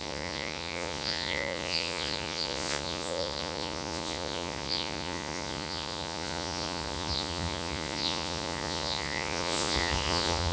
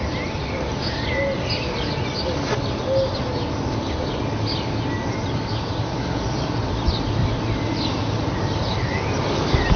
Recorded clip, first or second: second